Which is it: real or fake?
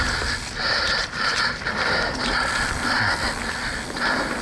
real